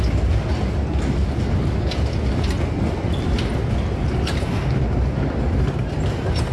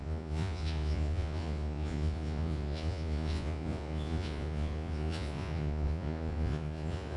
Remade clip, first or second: second